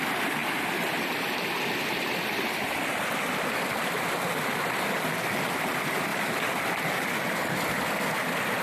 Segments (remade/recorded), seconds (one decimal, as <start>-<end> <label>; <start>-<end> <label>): 0.0-8.6 recorded

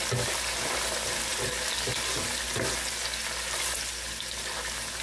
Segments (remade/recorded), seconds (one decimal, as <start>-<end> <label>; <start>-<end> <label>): 0.0-5.0 recorded

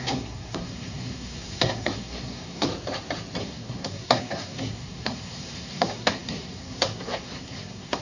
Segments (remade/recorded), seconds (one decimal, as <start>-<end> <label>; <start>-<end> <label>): 0.0-2.7 remade; 2.7-3.4 recorded; 3.4-8.0 remade

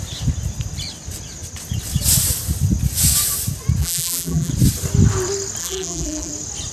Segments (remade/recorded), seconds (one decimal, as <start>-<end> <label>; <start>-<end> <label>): 0.0-3.8 recorded; 3.8-4.5 remade; 4.5-5.6 recorded; 5.6-6.3 remade; 6.3-6.7 recorded

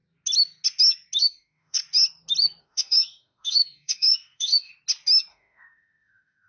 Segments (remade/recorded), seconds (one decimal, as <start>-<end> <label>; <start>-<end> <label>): 0.0-1.2 recorded; 1.2-1.8 remade; 1.8-2.6 recorded; 2.6-4.7 remade; 4.7-5.3 recorded; 5.3-6.5 remade

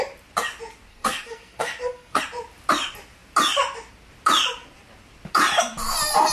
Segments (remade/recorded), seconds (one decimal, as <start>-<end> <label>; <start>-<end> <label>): 0.0-0.9 recorded; 0.9-2.2 remade; 2.2-6.3 recorded

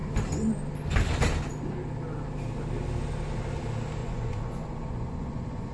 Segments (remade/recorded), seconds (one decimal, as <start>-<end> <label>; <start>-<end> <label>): 0.0-4.0 recorded; 4.0-5.7 remade

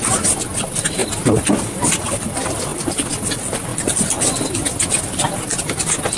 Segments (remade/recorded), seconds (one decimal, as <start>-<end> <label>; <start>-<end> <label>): 0.0-6.2 recorded